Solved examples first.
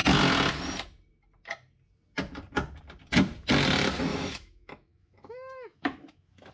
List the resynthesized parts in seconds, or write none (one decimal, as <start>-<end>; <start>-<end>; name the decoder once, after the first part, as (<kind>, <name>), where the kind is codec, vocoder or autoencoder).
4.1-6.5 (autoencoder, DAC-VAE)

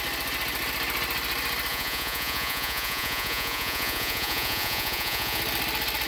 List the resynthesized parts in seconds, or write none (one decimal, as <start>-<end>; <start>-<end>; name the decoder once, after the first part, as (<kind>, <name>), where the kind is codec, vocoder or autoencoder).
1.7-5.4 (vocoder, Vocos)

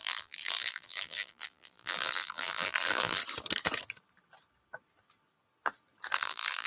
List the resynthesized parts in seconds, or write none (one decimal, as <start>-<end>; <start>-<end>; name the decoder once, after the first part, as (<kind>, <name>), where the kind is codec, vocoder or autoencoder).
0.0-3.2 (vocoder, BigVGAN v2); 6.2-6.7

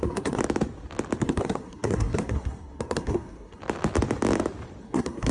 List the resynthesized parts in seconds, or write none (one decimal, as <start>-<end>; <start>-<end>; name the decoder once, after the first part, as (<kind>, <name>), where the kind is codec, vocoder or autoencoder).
0.0-0.4 (codec, SNAC); 1.2-3.6; 4.8-5.3

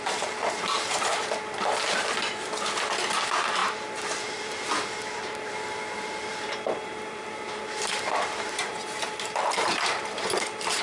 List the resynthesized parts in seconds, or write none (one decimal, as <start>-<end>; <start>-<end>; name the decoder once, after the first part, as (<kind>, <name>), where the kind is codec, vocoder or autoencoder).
0.0-1.1 (vocoder, BigVGAN v2); 3.2-10.8

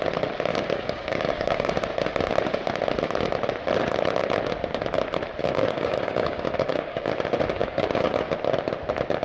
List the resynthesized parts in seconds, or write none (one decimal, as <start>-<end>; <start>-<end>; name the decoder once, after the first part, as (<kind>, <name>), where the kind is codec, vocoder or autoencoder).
0.5-1.8 (codec, DAC); 5.4-7.1; 7.6-8.3

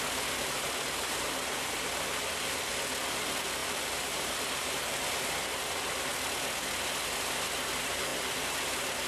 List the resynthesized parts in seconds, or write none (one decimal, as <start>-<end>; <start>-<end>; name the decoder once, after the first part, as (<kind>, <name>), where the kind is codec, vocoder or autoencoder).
none